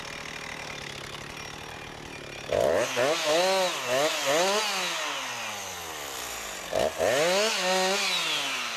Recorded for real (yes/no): yes